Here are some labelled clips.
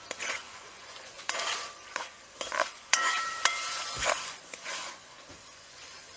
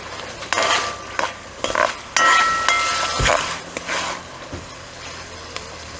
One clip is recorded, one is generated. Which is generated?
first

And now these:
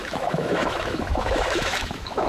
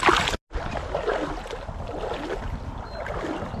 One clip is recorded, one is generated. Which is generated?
first